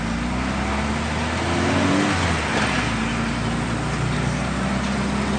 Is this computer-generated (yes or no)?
no